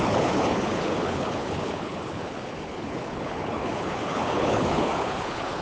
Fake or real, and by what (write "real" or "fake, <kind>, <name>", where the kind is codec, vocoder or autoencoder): fake, codec, HILCodec